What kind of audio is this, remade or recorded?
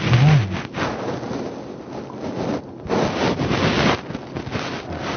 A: recorded